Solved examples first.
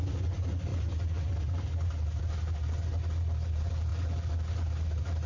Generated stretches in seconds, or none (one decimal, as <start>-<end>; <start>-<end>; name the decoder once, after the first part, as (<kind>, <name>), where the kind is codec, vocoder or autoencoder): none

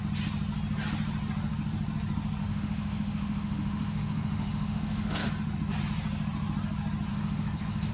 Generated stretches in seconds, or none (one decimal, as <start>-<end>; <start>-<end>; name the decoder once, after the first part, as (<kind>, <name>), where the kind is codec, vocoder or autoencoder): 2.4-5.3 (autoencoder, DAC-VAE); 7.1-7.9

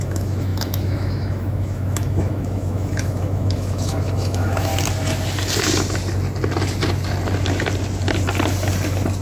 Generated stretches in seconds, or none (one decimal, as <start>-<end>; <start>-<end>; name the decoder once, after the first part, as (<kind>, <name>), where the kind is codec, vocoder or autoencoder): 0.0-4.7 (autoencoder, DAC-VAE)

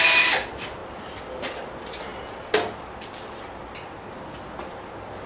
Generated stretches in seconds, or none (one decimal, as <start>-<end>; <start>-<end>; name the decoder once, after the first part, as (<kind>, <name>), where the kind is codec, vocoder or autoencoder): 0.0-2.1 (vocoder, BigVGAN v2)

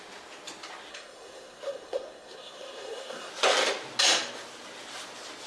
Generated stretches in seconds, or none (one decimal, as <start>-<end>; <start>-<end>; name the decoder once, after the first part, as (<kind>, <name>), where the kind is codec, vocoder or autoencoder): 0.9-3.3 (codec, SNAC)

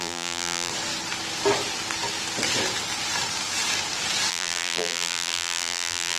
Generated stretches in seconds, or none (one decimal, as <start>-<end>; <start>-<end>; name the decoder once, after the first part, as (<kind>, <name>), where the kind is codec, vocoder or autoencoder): 0.0-0.7 (vocoder, BigVGAN v2); 4.3-6.2

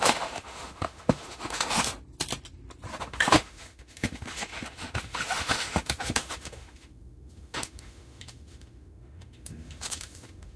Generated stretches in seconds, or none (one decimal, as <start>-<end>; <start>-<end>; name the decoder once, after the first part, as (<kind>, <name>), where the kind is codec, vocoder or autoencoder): 0.0-1.9 (autoencoder, DAC-VAE); 3.0-10.6

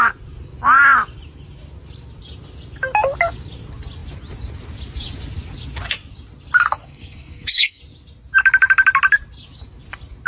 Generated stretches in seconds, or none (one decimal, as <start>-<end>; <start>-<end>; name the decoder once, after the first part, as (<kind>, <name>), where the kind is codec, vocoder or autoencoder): 6.8-7.8 (codec, SNAC)